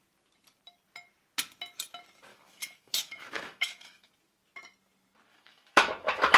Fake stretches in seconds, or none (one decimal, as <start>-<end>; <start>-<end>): 2.3-4.1; 5.3-6.4